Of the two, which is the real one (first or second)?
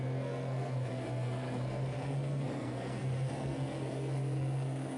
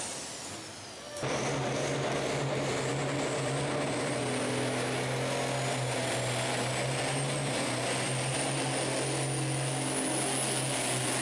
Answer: second